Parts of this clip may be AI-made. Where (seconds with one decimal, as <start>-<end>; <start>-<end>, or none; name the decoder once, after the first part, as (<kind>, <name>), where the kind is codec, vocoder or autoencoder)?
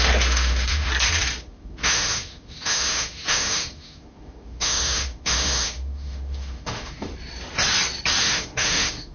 0.0-0.9 (autoencoder, DAC-VAE); 1.4-7.1; 8.2-9.1